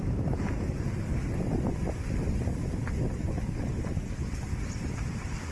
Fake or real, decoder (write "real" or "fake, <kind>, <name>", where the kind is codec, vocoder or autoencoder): real